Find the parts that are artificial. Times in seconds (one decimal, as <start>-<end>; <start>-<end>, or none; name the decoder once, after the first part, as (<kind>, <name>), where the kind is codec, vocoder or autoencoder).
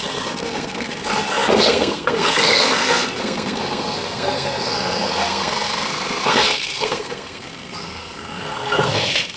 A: 0.0-9.4 (codec, SNAC)